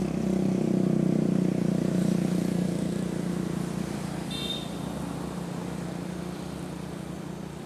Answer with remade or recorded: recorded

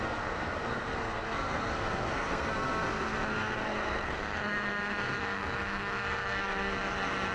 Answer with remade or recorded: remade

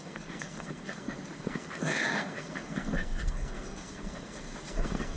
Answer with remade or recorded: remade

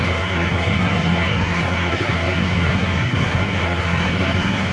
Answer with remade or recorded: remade